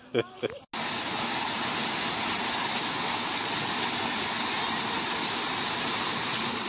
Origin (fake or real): real